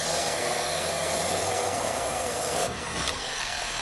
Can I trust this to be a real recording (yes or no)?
no